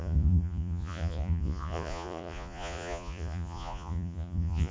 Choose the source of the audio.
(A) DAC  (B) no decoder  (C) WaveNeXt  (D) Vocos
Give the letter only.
D